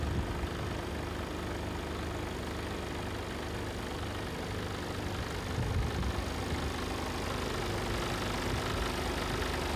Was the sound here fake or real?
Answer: real